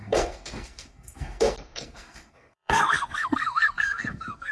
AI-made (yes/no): yes